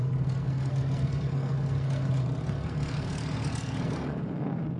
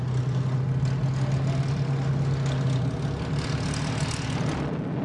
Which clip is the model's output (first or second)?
first